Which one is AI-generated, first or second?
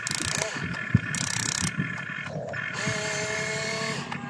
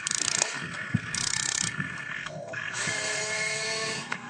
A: second